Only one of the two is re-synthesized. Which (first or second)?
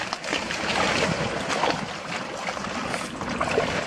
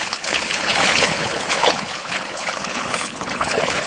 second